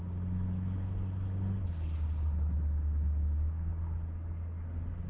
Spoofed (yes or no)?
no